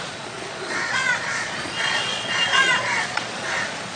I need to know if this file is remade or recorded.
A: remade